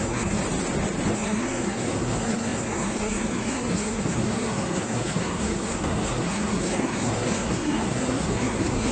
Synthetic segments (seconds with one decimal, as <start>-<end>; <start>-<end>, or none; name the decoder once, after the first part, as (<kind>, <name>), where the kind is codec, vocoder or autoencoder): 0.0-0.4 (codec, SNAC); 1.1-8.9